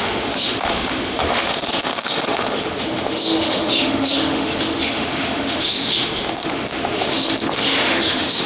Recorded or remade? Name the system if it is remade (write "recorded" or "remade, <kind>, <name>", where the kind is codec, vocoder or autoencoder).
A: remade, autoencoder, DAC-VAE